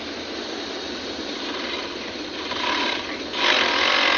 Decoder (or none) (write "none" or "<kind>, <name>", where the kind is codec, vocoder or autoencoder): none